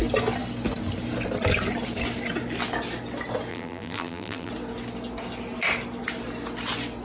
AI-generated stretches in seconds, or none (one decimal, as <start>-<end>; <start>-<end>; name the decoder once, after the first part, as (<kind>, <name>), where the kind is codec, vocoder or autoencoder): 3.5-4.5 (vocoder, BigVGAN v2)